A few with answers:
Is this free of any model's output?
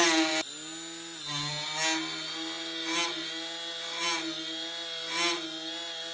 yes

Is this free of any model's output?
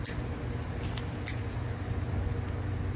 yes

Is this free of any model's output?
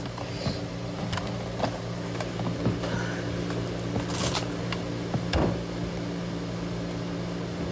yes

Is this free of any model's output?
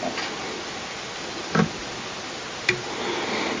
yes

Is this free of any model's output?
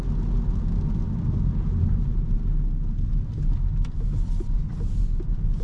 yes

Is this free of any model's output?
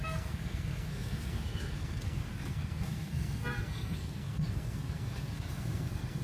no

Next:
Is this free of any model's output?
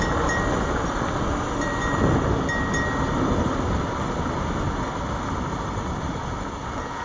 yes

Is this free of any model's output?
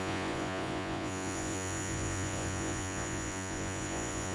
no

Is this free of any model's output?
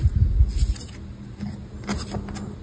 yes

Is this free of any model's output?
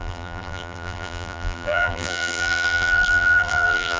no